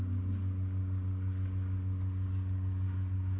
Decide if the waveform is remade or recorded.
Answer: recorded